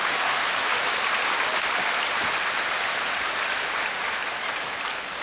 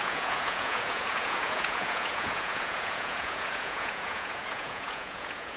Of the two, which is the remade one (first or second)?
second